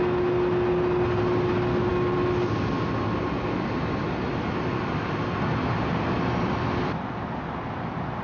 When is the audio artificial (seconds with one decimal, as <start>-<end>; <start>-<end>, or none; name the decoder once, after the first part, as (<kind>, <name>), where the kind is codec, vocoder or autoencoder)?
none